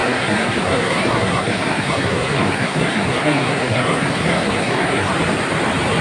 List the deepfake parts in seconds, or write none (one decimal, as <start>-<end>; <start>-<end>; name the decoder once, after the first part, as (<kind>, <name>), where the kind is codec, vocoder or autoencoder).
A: 0.0-5.1 (codec, SNAC)